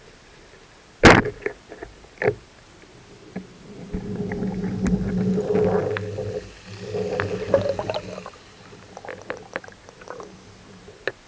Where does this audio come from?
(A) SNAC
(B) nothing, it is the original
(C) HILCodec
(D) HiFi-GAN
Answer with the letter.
B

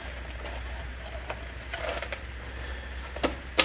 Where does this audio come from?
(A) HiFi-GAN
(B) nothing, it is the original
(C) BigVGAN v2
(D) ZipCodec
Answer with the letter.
B